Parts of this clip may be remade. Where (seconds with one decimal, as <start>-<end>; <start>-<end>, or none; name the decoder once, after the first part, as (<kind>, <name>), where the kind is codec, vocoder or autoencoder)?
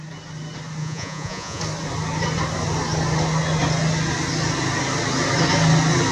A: 0.8-1.6 (vocoder, Vocos)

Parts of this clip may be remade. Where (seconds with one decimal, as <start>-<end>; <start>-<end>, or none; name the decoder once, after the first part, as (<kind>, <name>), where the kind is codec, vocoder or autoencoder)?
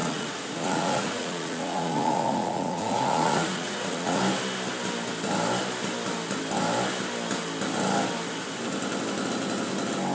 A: 0.0-4.2 (vocoder, Vocos)